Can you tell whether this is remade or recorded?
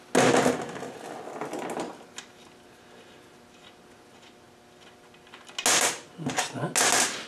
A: recorded